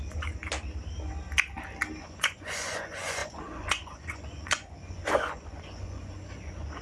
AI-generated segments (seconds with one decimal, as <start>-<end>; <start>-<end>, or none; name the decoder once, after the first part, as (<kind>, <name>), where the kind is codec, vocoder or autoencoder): 0.0-0.4 (vocoder, Vocos); 2.0-6.8